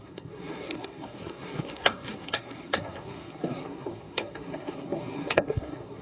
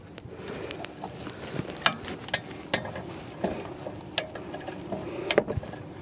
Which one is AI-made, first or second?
first